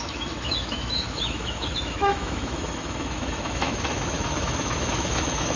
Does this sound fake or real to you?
fake